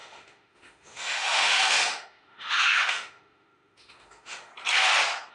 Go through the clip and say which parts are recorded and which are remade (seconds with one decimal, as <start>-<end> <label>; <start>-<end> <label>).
0.0-4.5 remade; 4.5-5.3 recorded